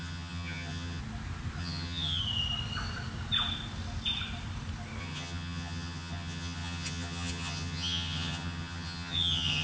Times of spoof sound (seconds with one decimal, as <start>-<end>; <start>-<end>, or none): 0.0-1.0; 1.6-2.2; 5.0-9.6